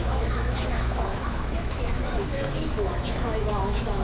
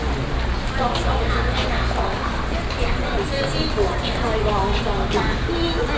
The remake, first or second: first